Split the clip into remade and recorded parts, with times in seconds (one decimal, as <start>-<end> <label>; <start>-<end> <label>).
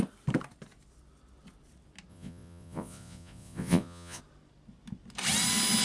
0.0-2.1 recorded; 2.1-4.2 remade; 4.2-5.8 recorded